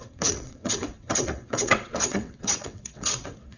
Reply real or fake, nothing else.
fake